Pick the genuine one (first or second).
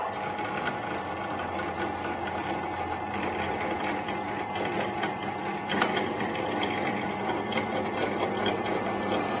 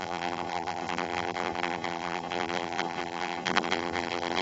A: first